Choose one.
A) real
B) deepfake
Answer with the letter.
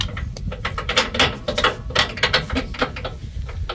A